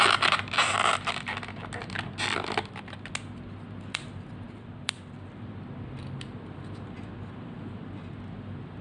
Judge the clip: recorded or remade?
recorded